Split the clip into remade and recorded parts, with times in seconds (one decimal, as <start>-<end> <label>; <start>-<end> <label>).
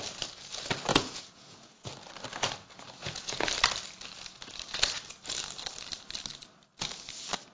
0.0-0.9 recorded; 0.9-1.9 remade; 1.9-3.0 recorded; 3.0-3.5 remade; 3.5-7.5 recorded